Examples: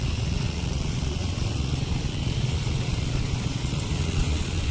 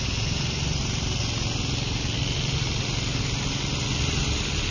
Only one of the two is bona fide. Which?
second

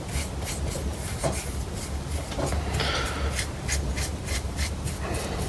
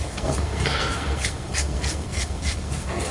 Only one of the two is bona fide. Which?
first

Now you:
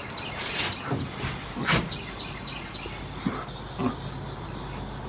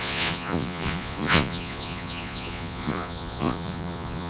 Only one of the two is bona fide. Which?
first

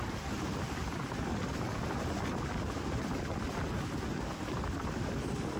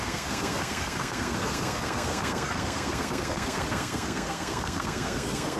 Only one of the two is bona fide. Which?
first